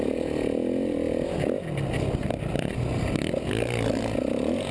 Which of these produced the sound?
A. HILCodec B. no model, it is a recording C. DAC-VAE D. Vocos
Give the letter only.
B